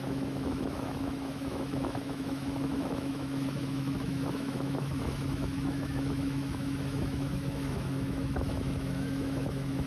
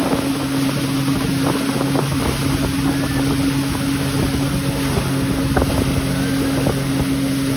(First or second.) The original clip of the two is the second